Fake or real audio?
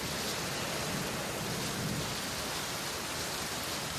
real